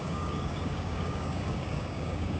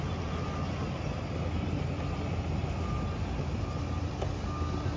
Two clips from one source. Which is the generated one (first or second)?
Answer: first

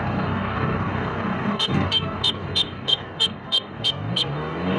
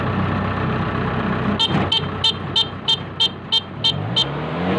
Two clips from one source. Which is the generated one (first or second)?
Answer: first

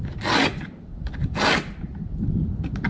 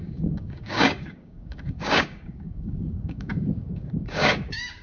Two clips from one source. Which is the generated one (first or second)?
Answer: second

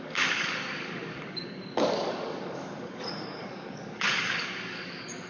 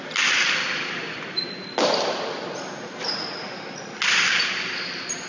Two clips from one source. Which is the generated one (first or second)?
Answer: first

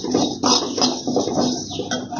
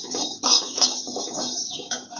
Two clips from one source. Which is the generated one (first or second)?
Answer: second